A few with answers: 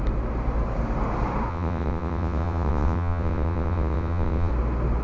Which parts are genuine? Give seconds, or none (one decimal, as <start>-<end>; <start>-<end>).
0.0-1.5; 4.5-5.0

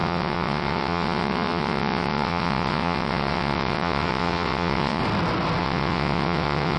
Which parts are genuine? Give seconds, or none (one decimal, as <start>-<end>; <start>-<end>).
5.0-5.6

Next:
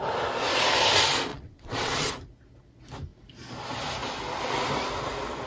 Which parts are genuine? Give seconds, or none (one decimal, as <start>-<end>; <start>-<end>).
0.0-1.3; 2.1-5.5